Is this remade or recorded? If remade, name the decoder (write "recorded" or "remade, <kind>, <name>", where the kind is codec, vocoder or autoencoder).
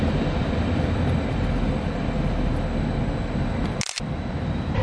recorded